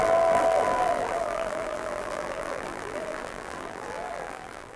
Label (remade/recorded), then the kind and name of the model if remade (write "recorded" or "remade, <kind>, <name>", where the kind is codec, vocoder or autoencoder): remade, vocoder, BigVGAN v2